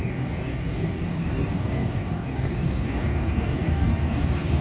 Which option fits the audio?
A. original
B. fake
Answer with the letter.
B